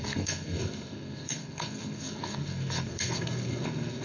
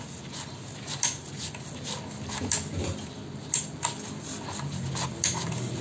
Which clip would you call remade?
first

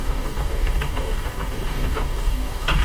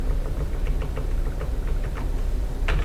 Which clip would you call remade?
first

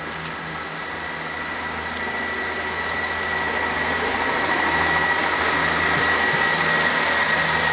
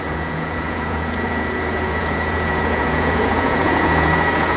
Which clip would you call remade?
second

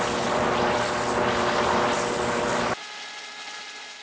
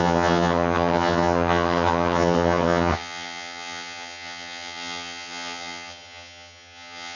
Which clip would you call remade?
second